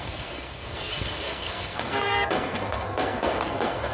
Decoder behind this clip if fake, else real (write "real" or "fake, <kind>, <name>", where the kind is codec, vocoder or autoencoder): fake, codec, SNAC